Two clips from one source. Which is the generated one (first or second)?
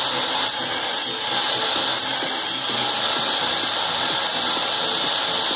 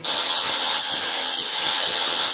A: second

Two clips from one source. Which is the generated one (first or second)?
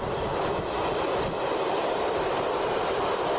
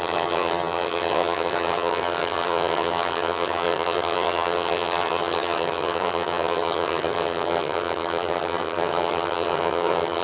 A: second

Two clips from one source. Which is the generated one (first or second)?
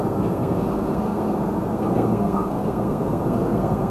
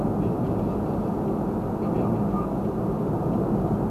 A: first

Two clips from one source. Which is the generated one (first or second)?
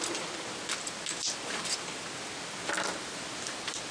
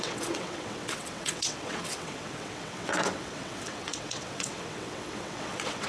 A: second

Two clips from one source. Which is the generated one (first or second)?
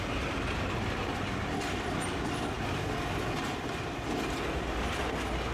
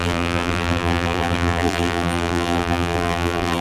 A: second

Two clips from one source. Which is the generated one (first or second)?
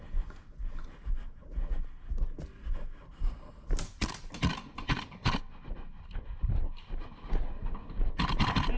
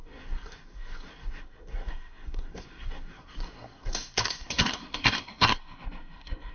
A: second